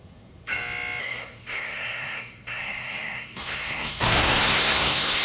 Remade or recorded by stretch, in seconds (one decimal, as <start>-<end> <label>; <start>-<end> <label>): 0.0-0.5 remade; 0.5-1.0 recorded; 1.0-5.2 remade